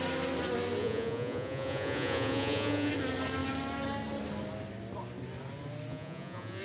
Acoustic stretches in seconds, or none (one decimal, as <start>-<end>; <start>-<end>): 0.0-0.8; 2.9-5.9